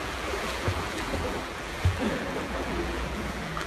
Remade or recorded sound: remade